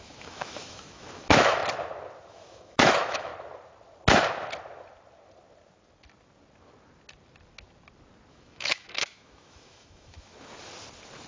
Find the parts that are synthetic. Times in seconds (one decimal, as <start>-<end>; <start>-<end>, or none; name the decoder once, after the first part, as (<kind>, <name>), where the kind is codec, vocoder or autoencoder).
0.0-1.6 (autoencoder, DAC-VAE); 2.3-3.3; 8.3-10.3